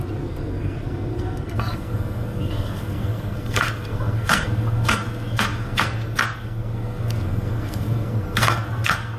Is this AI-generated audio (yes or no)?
yes